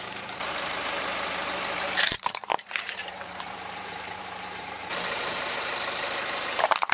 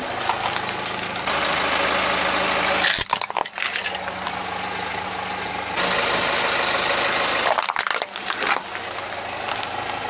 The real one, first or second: second